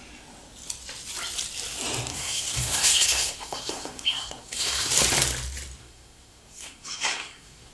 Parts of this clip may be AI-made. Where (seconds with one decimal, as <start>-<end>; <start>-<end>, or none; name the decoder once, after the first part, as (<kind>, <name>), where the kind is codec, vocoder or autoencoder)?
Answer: 2.1-4.9 (codec, SNAC); 5.8-7.7